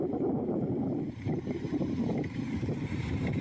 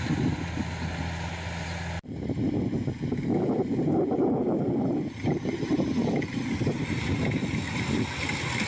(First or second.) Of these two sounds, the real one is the second